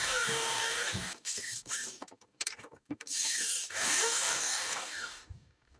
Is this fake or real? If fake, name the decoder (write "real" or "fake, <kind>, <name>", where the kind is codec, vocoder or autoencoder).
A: fake, codec, DAC